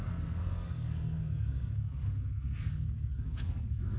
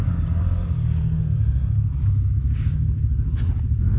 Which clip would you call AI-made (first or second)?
first